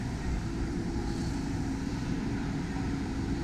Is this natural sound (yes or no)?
no